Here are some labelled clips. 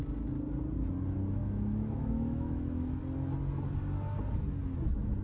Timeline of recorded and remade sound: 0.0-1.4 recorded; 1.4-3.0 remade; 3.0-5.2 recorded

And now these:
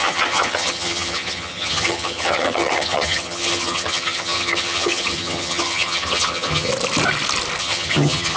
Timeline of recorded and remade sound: 0.0-6.7 remade; 6.7-7.6 recorded; 7.6-8.4 remade